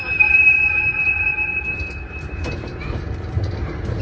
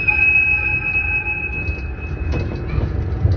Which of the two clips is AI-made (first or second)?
first